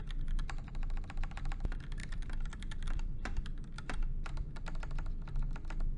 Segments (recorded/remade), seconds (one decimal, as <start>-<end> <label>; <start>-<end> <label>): 0.0-2.0 recorded; 2.0-4.5 remade; 4.5-6.0 recorded